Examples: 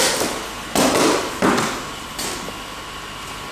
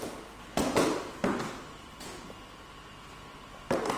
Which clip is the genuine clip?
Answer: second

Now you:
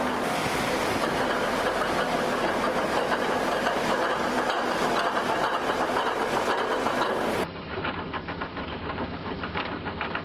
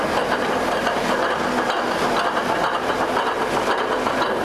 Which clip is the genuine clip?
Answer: second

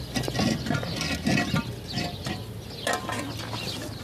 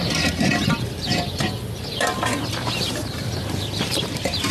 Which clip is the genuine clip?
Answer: first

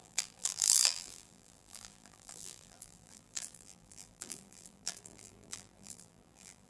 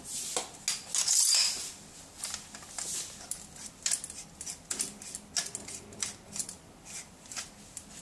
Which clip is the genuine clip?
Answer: second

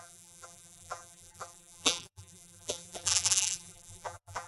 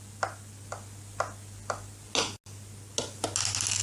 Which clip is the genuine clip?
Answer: second